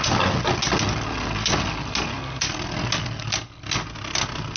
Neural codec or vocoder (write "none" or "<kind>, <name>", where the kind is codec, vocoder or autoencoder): none